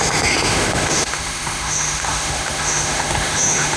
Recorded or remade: remade